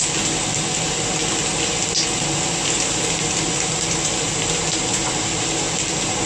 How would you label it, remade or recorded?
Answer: recorded